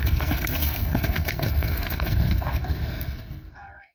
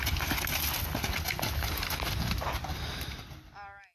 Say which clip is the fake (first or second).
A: first